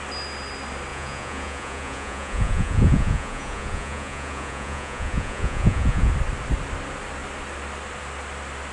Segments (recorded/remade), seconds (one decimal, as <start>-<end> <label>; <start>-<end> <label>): 0.0-0.9 recorded; 0.9-6.1 remade; 6.1-8.7 recorded